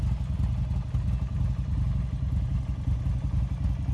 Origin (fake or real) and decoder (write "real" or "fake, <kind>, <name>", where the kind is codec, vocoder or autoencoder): real